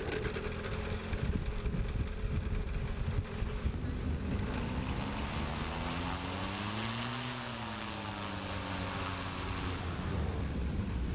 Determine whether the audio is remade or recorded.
recorded